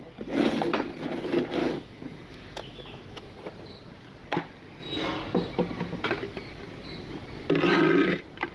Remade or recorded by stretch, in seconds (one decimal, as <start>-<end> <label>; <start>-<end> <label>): 0.0-1.6 recorded; 1.6-3.4 remade; 3.4-8.5 recorded